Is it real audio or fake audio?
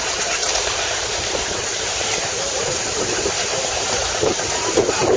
fake